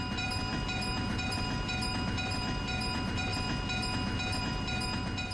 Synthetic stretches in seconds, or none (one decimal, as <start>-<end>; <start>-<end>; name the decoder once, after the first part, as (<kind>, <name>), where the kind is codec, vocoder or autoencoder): 0.0-3.3 (vocoder, BigVGAN v2); 4.4-5.3